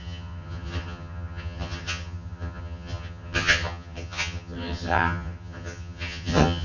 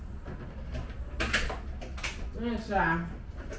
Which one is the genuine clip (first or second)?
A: second